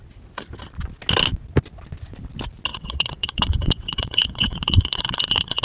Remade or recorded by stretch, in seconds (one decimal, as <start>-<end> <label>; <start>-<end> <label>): 0.0-2.7 recorded; 2.7-5.6 remade